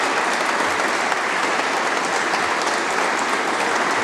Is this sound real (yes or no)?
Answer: yes